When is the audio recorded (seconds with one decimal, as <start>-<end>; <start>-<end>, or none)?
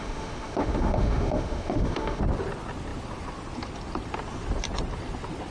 2.2-5.5